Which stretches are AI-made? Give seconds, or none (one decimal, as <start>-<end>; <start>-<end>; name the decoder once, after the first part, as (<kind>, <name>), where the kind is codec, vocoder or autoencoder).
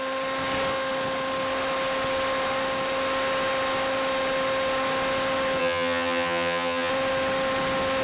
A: 5.6-6.9 (vocoder, HiFi-GAN)